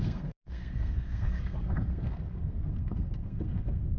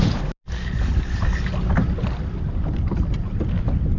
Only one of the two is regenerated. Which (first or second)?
first